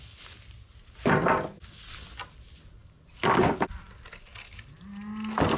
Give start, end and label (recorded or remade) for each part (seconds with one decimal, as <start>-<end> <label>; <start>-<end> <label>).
0.0-5.6 recorded